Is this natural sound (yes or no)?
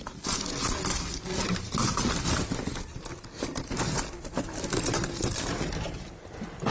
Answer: yes